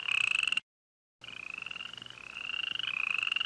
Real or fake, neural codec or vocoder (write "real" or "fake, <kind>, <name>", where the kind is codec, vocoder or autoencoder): real